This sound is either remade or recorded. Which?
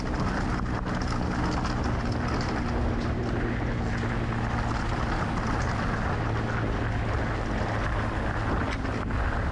recorded